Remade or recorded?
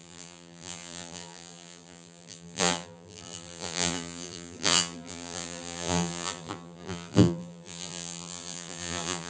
remade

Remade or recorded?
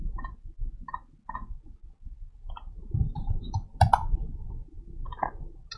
recorded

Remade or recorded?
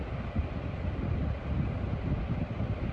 recorded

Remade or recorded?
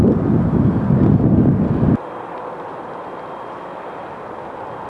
recorded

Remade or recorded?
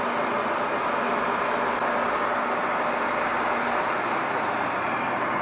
recorded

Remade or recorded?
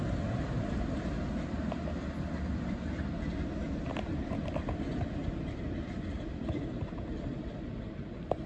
recorded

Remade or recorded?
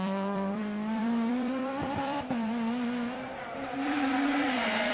remade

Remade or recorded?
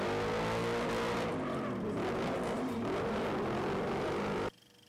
recorded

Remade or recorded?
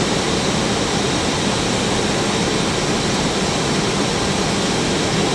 recorded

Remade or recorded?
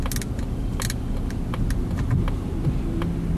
recorded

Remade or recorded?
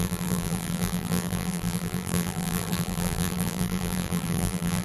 remade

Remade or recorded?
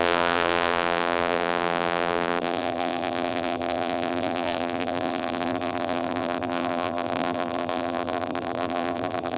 remade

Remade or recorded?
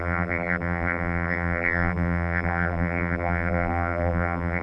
remade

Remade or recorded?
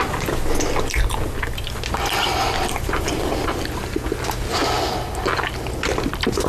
recorded